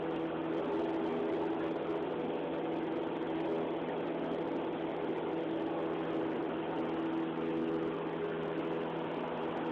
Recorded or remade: recorded